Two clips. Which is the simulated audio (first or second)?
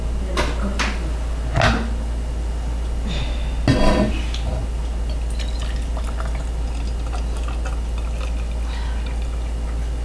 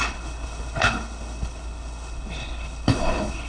second